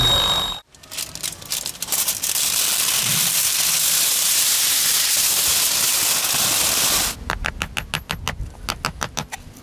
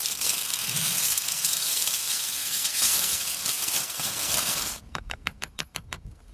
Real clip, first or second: first